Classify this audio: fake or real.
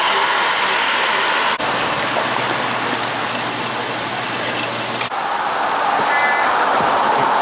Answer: real